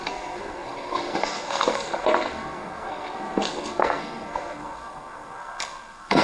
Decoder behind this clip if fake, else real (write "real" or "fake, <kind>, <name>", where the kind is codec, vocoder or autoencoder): fake, codec, SNAC